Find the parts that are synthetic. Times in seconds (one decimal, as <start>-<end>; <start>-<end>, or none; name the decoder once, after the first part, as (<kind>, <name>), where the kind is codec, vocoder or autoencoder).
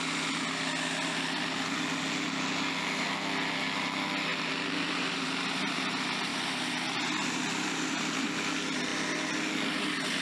4.3-5.8 (vocoder, BigVGAN v2); 6.3-7.0